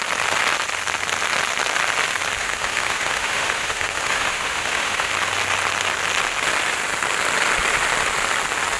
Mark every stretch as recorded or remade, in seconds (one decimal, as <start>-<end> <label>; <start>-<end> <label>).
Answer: 0.0-2.4 recorded; 2.4-5.1 remade; 5.1-8.8 recorded